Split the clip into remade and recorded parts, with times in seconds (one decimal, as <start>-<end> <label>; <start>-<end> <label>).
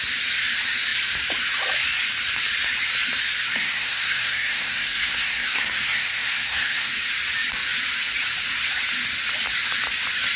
0.0-3.6 recorded; 3.6-6.9 remade; 6.9-10.4 recorded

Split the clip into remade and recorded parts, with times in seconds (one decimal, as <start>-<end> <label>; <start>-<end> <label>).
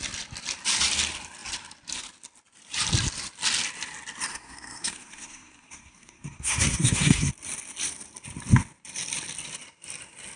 0.0-4.3 recorded; 4.3-7.3 remade; 7.3-10.4 recorded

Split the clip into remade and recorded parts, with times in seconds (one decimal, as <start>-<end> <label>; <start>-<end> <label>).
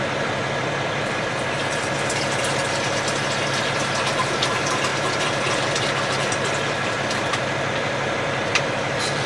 0.0-2.6 remade; 2.6-4.1 recorded; 4.1-9.3 remade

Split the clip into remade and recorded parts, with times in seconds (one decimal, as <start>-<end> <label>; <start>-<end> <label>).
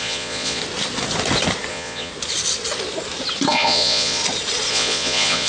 0.0-0.6 remade; 0.6-1.7 recorded; 1.7-2.1 remade; 2.1-3.5 recorded; 3.5-4.2 remade; 4.2-4.7 recorded; 4.7-5.5 remade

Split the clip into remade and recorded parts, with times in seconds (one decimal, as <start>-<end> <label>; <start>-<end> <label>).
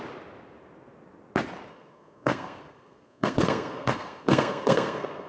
0.0-1.7 recorded; 1.7-5.3 remade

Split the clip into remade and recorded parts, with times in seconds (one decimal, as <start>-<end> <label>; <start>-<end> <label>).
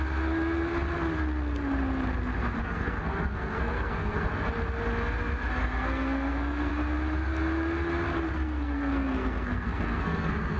0.0-2.6 recorded; 2.6-4.3 remade; 4.3-5.6 recorded; 5.6-6.7 remade; 6.7-8.3 recorded; 8.3-10.6 remade